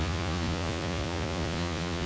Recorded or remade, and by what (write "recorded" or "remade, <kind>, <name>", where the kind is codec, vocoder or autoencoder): remade, vocoder, Vocos